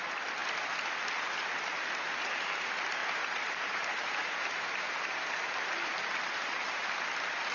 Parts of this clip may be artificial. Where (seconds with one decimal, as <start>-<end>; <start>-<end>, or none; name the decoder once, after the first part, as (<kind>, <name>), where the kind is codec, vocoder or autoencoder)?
3.0-7.0 (vocoder, BigVGAN v2)